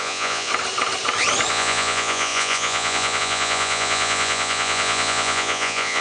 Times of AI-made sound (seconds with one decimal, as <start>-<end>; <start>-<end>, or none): 0.0-0.5; 1.5-6.0